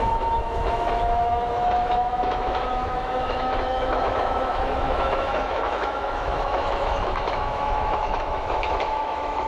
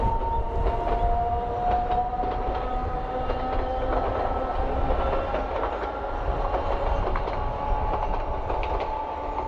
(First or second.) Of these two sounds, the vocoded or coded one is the first